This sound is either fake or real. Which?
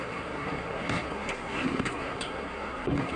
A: fake